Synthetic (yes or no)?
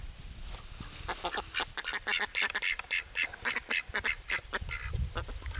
no